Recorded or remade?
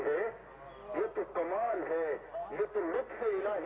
recorded